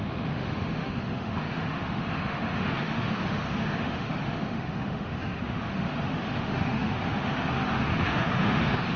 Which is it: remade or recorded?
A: remade